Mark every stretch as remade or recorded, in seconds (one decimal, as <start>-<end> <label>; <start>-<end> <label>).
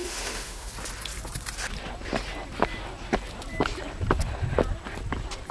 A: 0.0-0.7 remade; 0.7-5.5 recorded